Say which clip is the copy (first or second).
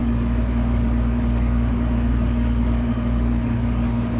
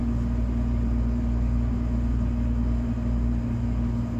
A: first